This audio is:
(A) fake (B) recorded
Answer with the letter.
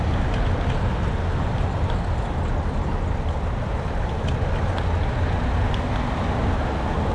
B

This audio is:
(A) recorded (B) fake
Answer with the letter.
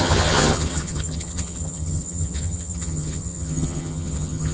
B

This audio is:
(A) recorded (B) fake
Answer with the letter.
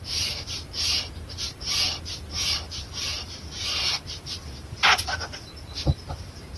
A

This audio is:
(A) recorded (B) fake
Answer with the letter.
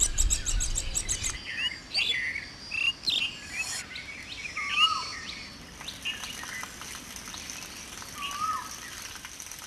A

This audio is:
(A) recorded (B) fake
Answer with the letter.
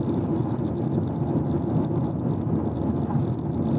A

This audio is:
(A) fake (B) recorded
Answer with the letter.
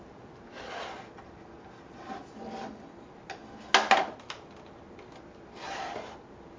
B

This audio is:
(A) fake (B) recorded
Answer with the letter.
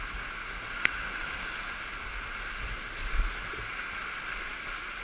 B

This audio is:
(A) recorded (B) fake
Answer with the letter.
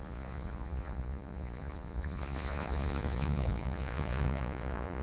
B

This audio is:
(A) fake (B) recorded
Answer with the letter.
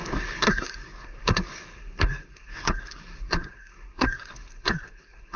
A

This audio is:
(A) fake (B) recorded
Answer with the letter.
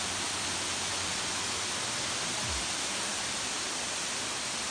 A